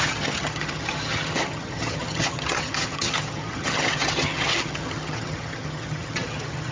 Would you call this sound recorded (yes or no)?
no